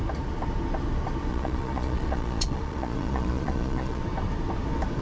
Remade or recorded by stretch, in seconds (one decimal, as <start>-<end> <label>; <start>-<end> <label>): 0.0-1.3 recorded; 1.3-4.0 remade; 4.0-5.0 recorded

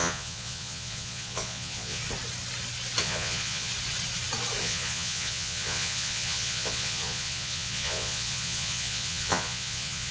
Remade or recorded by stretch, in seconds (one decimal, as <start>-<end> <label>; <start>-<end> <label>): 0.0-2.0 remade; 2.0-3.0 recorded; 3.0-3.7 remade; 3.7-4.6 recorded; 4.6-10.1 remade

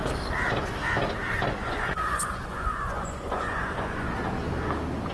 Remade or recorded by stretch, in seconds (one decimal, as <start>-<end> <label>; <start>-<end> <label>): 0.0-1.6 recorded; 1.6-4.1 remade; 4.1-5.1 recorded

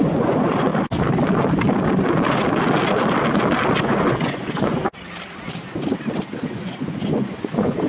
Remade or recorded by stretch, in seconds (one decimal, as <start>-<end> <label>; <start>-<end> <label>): 0.0-0.7 remade; 0.7-3.8 recorded; 3.8-4.8 remade; 4.8-6.5 recorded; 6.5-7.9 remade